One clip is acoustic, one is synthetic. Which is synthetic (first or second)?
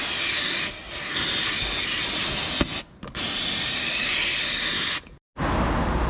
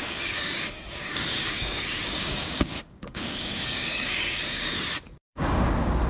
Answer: second